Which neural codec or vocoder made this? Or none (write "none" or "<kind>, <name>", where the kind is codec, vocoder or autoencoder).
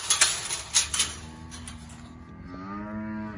none